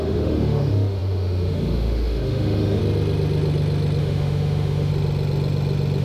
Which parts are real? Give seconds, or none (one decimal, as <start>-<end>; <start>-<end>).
2.8-4.0; 4.9-6.0

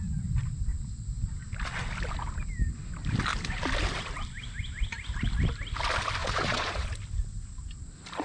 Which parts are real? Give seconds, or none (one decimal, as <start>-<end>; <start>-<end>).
0.0-6.2; 6.9-8.2